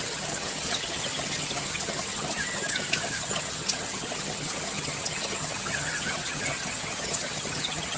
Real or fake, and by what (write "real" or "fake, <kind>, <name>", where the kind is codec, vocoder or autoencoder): fake, vocoder, HiFi-GAN